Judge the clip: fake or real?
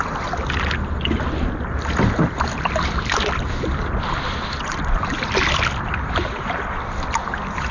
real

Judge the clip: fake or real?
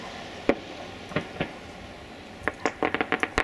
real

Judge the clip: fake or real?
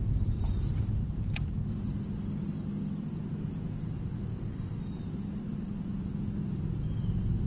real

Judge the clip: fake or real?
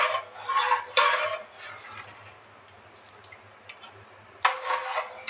real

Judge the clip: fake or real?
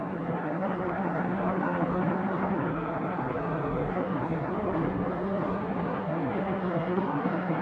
fake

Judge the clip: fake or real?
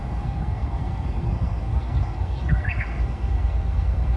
fake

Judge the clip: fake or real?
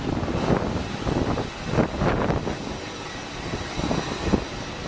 real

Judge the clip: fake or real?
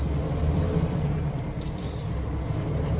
fake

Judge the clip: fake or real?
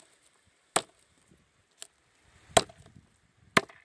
real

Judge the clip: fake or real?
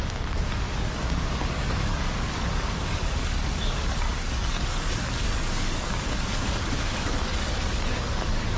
fake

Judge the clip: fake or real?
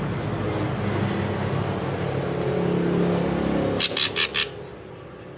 real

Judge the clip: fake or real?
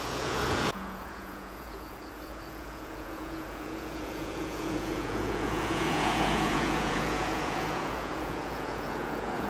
fake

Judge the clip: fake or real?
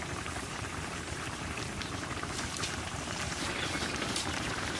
fake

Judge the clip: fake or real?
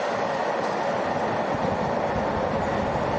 real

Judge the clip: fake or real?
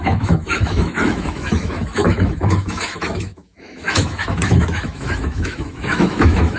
fake